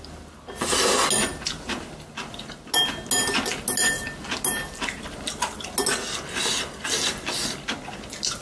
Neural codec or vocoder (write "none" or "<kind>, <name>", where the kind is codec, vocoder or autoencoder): none